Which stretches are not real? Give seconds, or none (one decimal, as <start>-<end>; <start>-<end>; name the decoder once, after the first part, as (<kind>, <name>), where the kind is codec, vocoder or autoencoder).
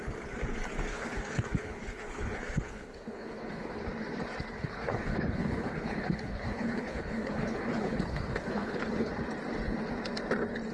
0.9-3.7 (codec, HILCodec); 4.5-9.1